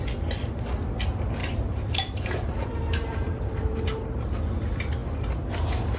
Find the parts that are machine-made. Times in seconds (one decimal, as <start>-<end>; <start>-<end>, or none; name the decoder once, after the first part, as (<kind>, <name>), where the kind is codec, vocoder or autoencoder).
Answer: 1.4-4.3 (vocoder, BigVGAN v2)